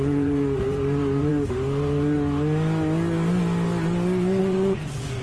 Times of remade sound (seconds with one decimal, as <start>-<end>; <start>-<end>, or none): 0.0-1.3; 4.4-5.2